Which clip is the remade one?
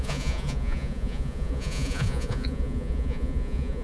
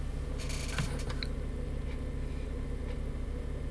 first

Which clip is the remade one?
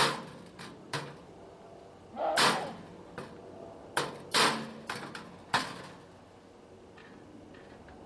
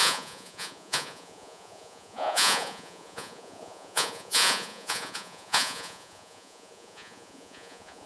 second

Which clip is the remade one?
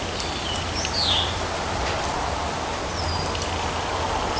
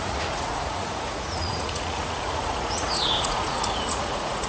second